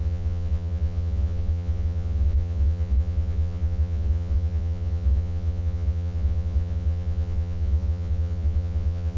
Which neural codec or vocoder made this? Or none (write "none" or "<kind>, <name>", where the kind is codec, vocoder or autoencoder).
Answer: vocoder, Vocos